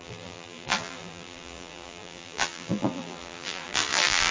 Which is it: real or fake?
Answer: fake